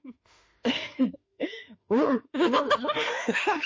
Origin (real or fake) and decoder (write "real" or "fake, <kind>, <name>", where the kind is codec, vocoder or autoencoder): fake, autoencoder, DAC-VAE